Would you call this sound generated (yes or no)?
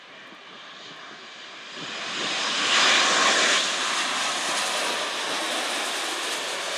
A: no